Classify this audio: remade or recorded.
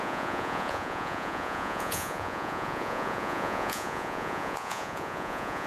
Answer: remade